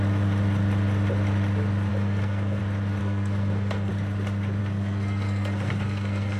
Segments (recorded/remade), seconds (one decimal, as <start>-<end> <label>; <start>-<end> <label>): 0.0-1.9 recorded; 1.9-2.6 remade; 2.6-3.0 recorded; 3.0-3.9 remade; 3.9-4.6 recorded; 4.6-6.4 remade

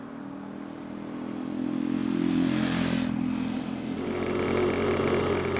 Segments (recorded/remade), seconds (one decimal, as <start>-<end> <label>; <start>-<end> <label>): 0.0-5.6 recorded

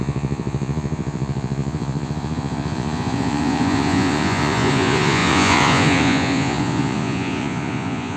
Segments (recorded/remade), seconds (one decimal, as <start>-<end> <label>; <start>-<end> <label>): 0.0-8.2 remade

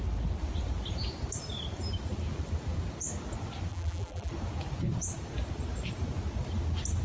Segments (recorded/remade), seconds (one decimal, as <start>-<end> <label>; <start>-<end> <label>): 0.0-3.7 recorded; 3.7-4.3 remade; 4.3-7.0 recorded